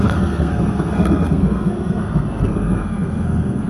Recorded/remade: remade